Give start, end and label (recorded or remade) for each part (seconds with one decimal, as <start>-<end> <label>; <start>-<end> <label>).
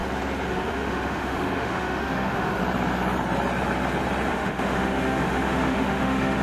0.0-0.5 recorded; 0.5-2.6 remade; 2.6-4.3 recorded; 4.3-6.4 remade